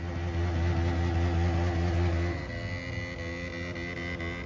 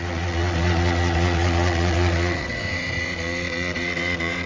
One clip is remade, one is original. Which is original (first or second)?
first